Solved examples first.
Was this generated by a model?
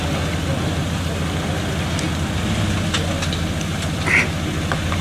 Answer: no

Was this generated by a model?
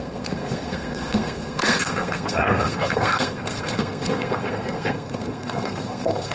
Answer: yes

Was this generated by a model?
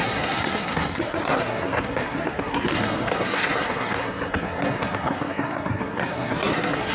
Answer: yes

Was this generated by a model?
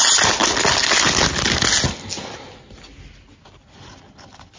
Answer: no